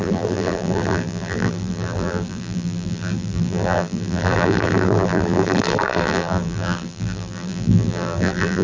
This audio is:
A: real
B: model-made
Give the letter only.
B